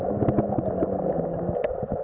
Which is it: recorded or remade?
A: recorded